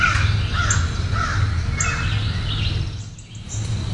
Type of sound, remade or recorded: recorded